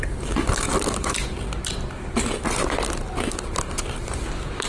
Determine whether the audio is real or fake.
real